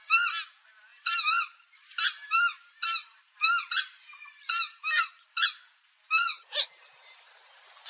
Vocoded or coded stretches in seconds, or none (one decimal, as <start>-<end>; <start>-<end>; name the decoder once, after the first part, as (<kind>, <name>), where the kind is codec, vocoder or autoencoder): 0.9-5.4 (vocoder, BigVGAN v2); 6.4-7.5